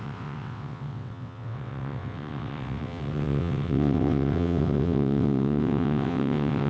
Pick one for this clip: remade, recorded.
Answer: remade